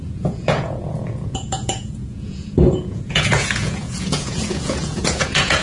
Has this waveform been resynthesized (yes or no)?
yes